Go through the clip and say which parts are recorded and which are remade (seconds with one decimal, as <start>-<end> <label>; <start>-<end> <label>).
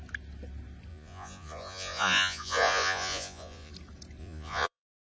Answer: 0.0-0.9 recorded; 0.9-3.7 remade; 3.7-4.2 recorded; 4.2-5.0 remade